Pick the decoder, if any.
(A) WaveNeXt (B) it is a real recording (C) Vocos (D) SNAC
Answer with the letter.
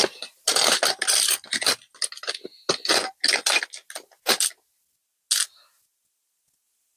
B